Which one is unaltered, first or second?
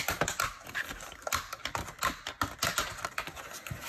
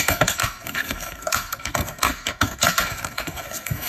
first